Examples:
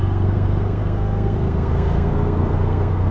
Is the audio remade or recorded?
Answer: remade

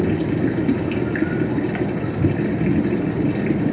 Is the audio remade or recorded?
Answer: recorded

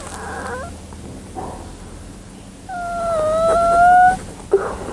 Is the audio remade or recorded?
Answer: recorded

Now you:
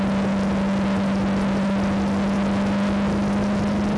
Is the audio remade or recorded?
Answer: recorded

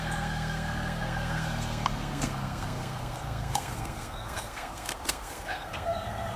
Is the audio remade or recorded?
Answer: remade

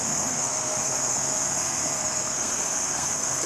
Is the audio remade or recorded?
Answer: remade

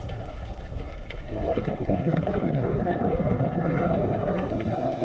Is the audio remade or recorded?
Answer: remade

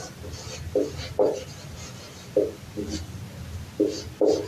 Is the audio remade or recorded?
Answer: recorded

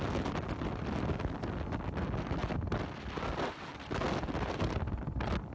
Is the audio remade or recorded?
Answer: recorded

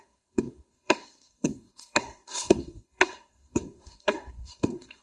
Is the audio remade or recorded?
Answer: remade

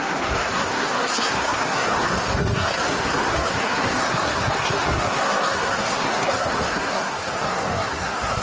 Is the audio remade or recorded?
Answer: remade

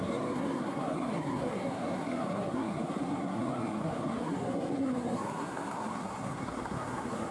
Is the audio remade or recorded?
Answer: remade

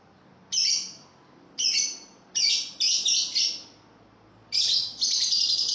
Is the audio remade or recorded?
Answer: recorded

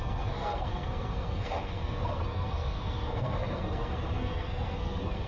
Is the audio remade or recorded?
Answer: remade